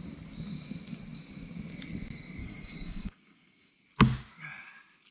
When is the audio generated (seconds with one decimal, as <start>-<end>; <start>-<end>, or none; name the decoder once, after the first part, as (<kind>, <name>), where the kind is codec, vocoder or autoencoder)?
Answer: 2.4-3.7 (codec, DAC)